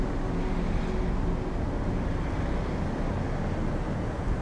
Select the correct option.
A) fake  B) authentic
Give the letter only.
B